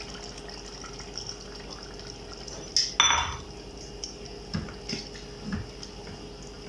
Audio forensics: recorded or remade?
recorded